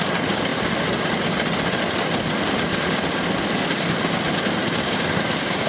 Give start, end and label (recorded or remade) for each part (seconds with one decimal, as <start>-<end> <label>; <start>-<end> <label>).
0.0-4.6 recorded; 4.6-5.7 remade